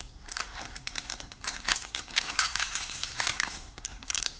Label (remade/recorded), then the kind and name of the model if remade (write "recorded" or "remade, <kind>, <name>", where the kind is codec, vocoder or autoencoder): remade, codec, SNAC